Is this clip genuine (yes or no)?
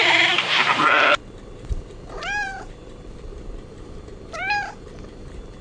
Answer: no